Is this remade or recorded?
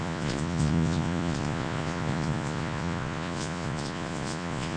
remade